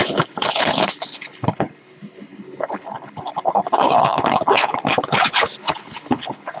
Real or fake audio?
fake